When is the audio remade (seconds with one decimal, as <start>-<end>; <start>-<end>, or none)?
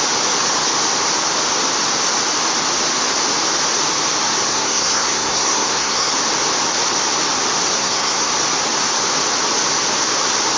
4.5-6.1; 7.7-8.3